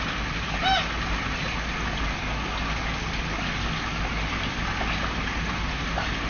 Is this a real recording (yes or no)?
yes